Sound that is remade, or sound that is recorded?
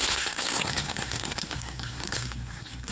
remade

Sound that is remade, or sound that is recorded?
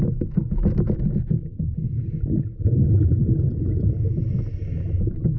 recorded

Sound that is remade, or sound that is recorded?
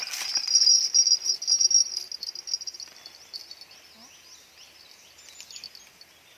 recorded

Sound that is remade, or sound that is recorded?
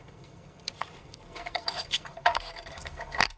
remade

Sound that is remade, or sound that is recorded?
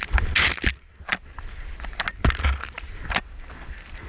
recorded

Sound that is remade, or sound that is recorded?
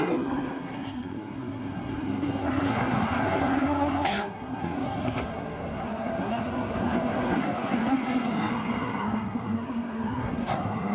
remade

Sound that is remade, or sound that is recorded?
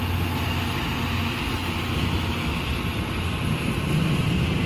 recorded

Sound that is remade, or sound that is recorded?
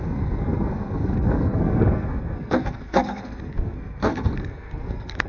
remade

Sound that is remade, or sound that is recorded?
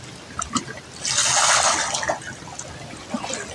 recorded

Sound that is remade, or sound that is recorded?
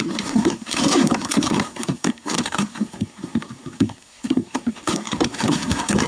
remade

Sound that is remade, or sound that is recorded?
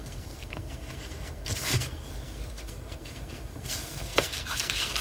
remade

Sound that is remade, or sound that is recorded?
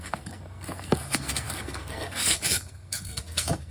remade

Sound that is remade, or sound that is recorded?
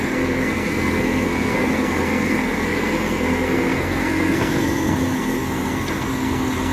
remade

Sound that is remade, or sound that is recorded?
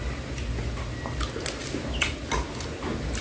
recorded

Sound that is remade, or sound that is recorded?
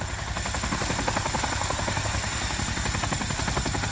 recorded